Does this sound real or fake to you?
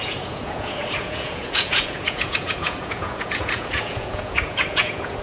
fake